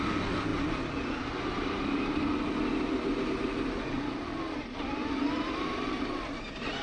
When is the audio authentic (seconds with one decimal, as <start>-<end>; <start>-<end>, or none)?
0.0-6.8